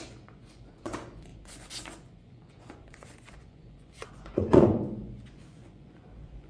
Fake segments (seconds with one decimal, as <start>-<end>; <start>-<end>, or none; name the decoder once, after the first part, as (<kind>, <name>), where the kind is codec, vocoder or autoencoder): 0.0-6.5 (vocoder, Vocos)

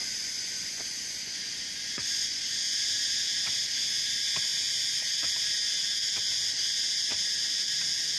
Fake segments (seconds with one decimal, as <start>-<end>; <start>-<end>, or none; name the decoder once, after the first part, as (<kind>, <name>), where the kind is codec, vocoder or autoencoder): 0.0-2.6 (vocoder, Vocos)

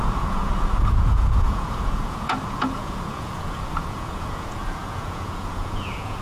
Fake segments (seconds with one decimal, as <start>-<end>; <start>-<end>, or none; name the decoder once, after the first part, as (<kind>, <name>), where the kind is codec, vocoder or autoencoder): 0.0-6.2 (vocoder, Vocos)

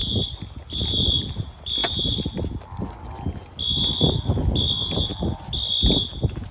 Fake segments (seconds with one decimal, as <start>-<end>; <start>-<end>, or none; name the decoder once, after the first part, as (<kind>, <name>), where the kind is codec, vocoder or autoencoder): none